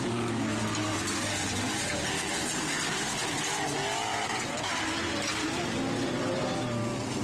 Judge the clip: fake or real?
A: real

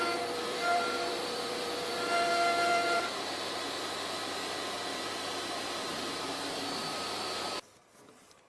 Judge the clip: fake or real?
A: fake